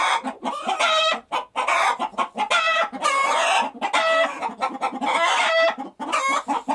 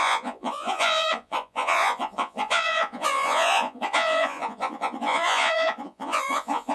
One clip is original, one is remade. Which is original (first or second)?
first